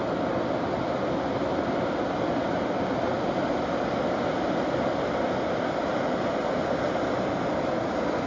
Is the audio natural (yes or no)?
yes